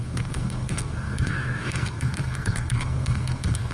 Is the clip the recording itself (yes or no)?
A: no